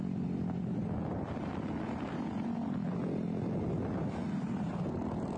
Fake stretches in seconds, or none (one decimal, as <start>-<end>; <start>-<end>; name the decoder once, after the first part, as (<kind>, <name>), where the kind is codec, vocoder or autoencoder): none